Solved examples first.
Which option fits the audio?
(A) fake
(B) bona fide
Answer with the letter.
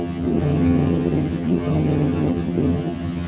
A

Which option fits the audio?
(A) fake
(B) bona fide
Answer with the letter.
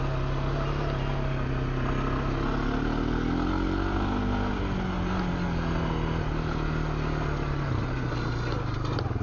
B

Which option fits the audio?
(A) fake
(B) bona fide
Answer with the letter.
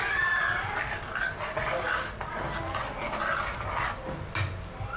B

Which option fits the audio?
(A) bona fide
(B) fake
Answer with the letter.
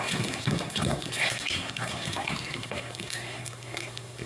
B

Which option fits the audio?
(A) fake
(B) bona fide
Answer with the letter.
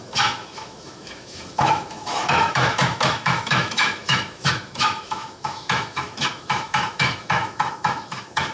A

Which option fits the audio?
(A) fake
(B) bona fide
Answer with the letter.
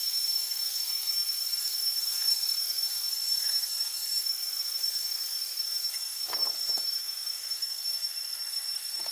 A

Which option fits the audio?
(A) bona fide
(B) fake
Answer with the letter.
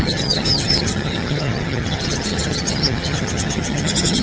B